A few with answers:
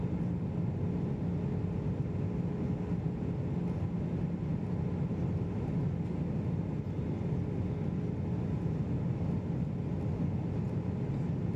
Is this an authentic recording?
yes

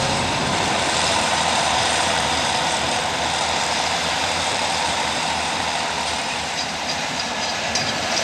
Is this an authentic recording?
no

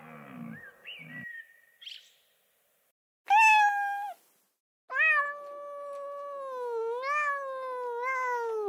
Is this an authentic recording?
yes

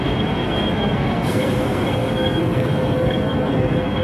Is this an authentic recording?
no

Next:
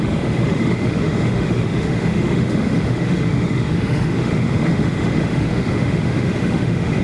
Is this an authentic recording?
no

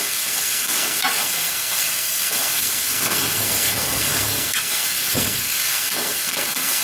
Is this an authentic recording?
no